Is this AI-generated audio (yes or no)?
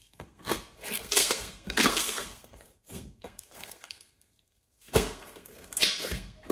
yes